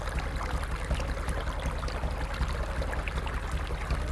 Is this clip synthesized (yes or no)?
no